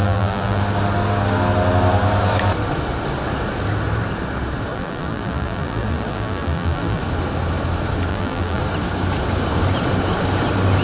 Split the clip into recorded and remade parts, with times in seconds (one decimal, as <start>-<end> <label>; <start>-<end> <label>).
0.0-0.6 remade; 0.6-4.7 recorded; 4.7-7.0 remade; 7.0-8.1 recorded; 8.1-8.6 remade; 8.6-10.8 recorded